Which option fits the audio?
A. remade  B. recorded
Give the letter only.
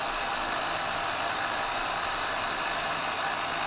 B